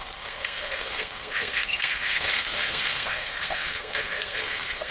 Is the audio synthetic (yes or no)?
yes